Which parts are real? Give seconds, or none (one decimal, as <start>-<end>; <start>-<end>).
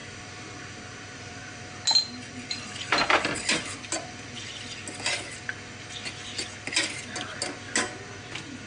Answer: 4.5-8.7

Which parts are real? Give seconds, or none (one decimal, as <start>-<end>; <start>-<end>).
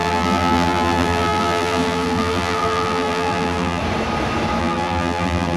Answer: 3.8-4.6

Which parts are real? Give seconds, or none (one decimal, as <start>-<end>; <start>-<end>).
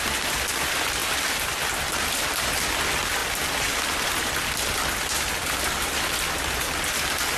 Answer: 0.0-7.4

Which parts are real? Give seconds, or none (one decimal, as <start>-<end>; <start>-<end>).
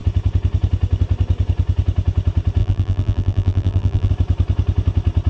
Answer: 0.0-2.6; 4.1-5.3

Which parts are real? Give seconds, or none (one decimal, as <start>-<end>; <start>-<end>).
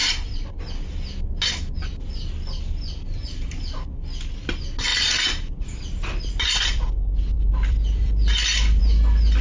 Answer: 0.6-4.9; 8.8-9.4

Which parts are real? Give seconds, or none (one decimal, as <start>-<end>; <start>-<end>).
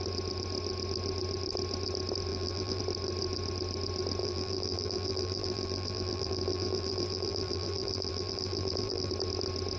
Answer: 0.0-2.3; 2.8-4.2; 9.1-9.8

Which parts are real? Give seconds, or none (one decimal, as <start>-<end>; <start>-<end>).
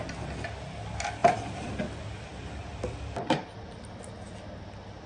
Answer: 0.0-1.2; 1.8-2.3; 4.1-5.1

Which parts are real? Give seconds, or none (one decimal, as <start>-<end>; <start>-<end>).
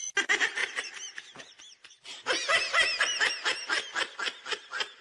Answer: 0.0-0.6; 1.5-5.0